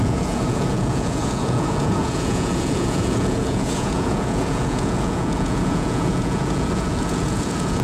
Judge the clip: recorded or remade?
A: remade